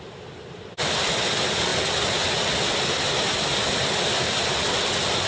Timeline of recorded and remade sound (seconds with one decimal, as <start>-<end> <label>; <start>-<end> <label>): 0.0-5.3 recorded